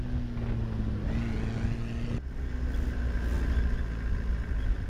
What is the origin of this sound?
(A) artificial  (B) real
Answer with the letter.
B